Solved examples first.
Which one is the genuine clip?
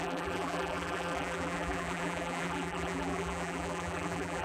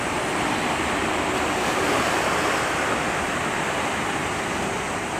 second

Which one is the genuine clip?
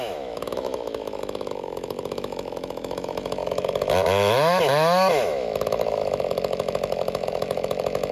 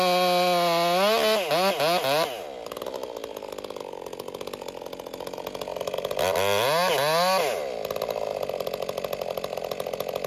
second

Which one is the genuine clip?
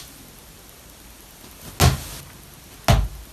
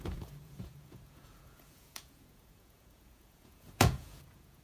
first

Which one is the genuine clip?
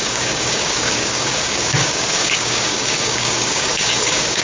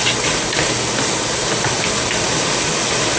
second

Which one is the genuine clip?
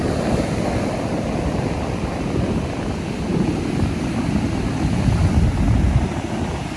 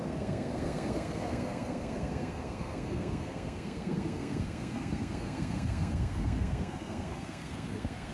first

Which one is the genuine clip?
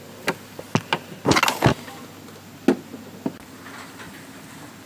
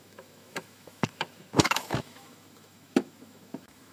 first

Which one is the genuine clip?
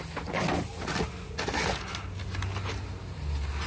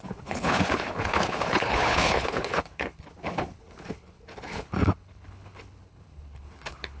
first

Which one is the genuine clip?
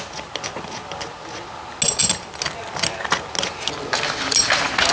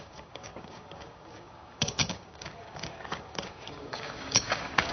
first